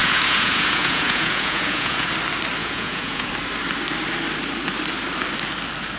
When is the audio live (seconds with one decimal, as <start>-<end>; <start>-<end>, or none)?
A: 2.1-2.6; 3.3-6.0